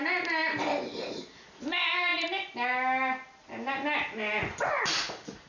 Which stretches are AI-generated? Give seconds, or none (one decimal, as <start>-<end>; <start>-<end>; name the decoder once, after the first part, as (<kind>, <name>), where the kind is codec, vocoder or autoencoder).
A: none